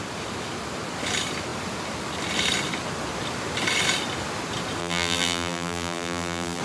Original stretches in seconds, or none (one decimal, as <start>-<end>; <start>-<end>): 0.0-4.8